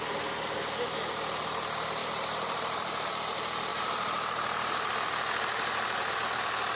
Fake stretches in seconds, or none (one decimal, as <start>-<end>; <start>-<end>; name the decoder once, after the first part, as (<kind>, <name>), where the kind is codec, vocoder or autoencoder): 2.0-3.1 (vocoder, BigVGAN v2); 3.7-4.9